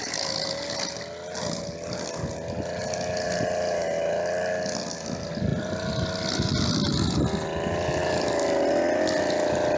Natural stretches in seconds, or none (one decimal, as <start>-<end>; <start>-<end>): 0.0-9.8